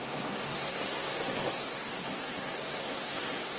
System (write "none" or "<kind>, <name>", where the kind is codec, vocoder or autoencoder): codec, SNAC